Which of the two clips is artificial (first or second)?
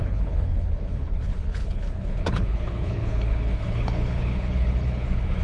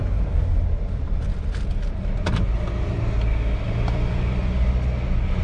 first